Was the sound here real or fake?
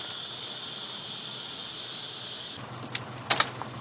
real